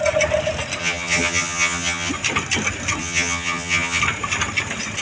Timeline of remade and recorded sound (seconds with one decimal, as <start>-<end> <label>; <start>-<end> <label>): 0.0-0.8 recorded; 0.8-2.1 remade; 2.1-3.0 recorded; 3.0-4.0 remade; 4.0-5.0 recorded